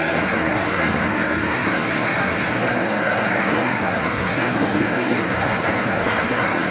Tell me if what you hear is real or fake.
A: fake